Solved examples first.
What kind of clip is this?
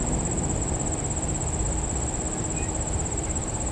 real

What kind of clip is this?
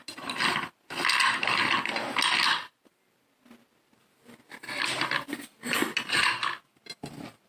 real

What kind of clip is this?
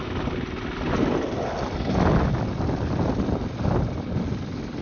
real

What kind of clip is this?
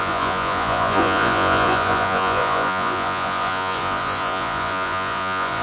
fake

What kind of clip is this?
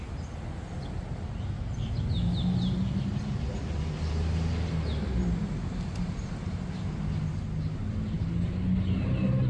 real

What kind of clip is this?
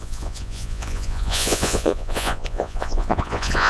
fake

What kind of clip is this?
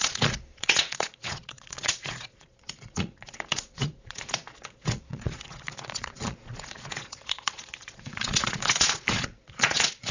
fake